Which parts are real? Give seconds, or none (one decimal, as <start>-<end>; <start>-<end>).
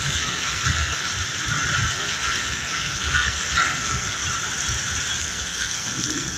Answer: 1.1-1.9; 4.2-5.2